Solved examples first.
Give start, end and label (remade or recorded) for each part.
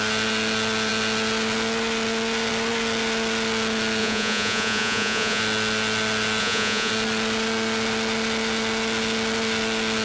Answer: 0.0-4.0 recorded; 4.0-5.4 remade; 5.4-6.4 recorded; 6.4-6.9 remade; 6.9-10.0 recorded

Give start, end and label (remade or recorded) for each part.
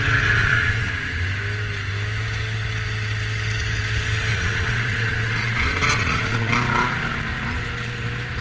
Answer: 0.0-0.4 recorded; 0.4-0.9 remade; 0.9-4.3 recorded; 4.3-6.5 remade; 6.5-8.4 recorded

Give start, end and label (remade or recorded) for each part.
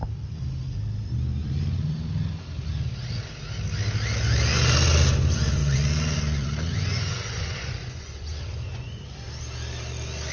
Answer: 0.0-5.6 recorded; 5.6-9.0 remade; 9.0-10.3 recorded